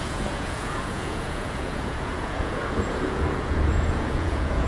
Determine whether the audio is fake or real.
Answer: fake